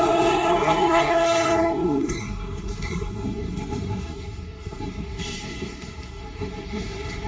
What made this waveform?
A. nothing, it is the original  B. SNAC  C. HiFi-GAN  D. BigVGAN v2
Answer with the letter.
B